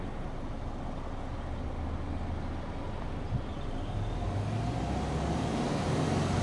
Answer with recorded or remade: recorded